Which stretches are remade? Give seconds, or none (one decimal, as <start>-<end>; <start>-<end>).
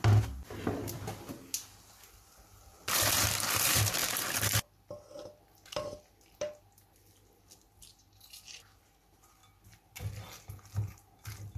none